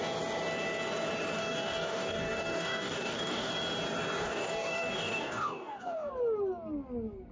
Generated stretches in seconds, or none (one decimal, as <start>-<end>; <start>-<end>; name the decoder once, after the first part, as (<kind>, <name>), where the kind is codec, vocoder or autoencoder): 1.4-3.5 (codec, DAC); 4.2-6.1

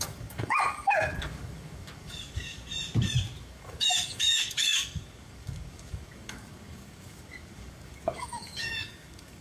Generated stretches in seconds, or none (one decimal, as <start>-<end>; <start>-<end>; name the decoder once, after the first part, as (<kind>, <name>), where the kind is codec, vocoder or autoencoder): 0.0-2.7 (codec, DAC); 3.4-9.4

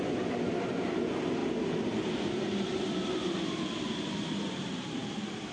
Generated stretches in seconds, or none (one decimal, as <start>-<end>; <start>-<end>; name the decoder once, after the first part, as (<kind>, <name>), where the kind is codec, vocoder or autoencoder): none

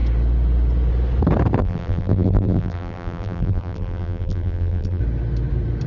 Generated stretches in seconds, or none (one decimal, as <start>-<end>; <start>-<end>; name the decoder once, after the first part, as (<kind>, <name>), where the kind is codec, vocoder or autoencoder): 1.6-5.0 (vocoder, BigVGAN v2)